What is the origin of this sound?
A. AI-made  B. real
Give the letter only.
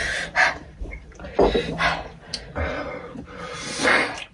B